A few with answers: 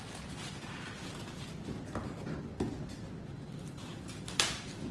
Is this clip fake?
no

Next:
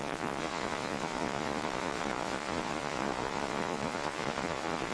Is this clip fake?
yes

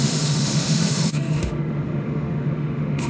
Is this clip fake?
yes